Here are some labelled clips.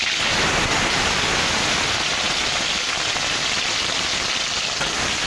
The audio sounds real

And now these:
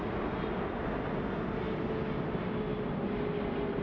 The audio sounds real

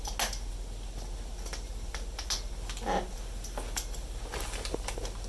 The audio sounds real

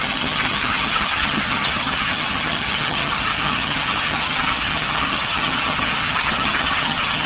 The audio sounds fake